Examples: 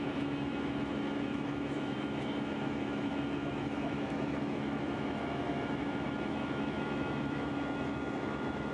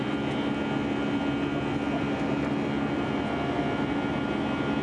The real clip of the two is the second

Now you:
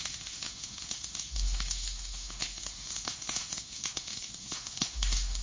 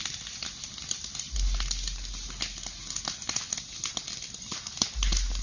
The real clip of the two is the second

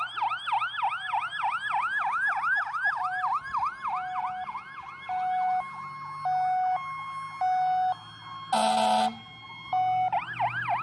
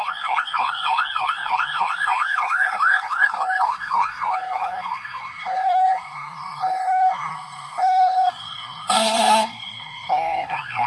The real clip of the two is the first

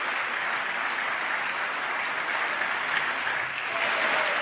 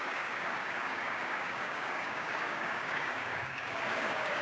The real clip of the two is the first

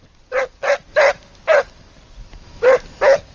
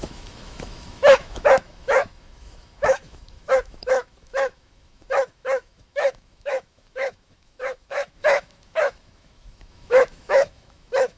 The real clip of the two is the first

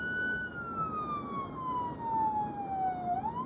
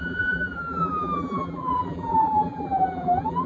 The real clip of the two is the first